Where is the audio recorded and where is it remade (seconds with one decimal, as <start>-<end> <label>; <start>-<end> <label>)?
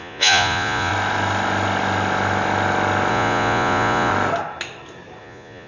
0.0-0.9 remade; 0.9-3.1 recorded; 3.1-4.1 remade; 4.1-5.2 recorded; 5.2-5.7 remade